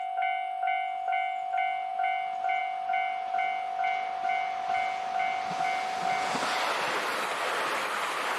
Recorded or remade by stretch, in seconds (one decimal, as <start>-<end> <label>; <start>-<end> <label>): 0.0-8.4 recorded